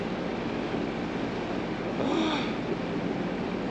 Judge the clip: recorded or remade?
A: recorded